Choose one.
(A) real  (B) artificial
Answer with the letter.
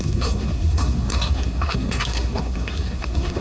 B